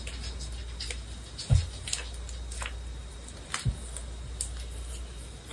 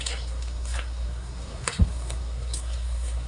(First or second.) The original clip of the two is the first